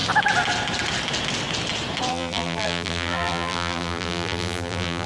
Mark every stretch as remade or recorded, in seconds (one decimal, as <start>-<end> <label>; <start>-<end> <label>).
0.0-2.1 recorded; 2.1-5.1 remade